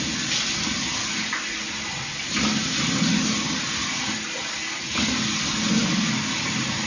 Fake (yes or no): no